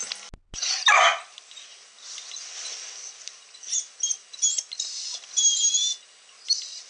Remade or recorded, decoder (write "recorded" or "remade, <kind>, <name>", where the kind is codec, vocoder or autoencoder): recorded